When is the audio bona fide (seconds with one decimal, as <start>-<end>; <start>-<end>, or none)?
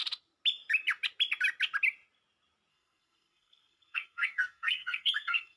0.0-2.7